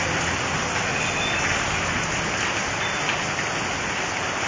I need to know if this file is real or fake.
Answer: real